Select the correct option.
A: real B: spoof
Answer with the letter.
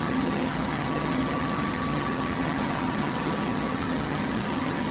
B